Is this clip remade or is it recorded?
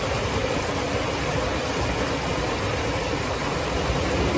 recorded